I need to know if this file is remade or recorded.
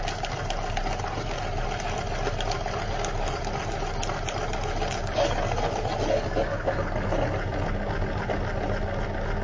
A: recorded